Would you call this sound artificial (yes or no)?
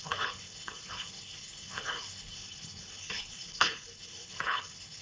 yes